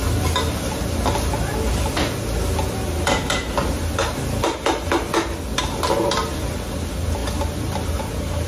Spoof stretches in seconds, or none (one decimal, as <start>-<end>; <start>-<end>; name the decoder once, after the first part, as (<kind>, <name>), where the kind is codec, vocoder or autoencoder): none